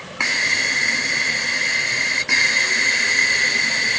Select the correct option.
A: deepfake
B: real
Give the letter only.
B